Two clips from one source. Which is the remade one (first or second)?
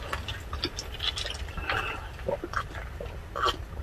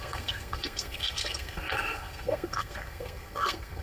second